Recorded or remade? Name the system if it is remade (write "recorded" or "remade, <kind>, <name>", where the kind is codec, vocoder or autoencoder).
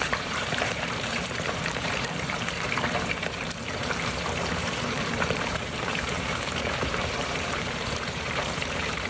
remade, vocoder, BigVGAN v2